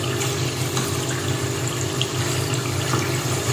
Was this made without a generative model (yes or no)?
yes